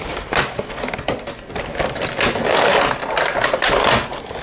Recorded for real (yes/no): yes